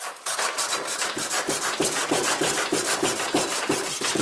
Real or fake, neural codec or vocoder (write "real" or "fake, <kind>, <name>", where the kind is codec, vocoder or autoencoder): fake, vocoder, BigVGAN v2